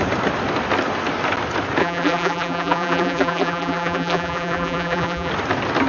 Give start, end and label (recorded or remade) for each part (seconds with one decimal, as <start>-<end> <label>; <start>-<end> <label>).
0.0-1.8 recorded; 1.8-5.3 remade; 5.3-5.9 recorded